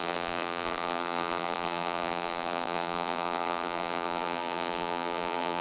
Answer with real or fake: fake